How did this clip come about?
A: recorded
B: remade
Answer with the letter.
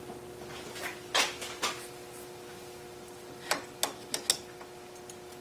A